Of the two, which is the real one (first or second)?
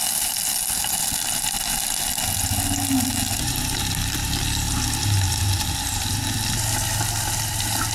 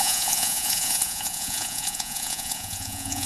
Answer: first